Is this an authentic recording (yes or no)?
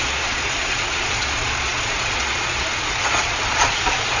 no